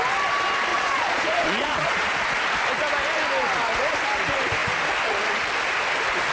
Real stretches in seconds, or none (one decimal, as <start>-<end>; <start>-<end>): 0.0-0.7; 2.2-6.3